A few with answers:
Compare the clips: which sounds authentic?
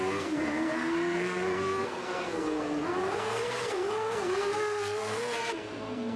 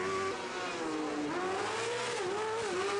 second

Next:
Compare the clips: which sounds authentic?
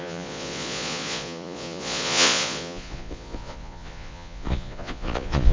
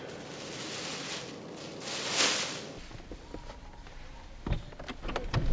second